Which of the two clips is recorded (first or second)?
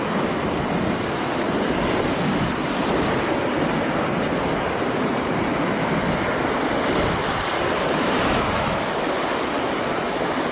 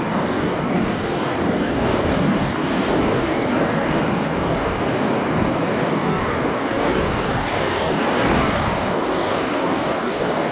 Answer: first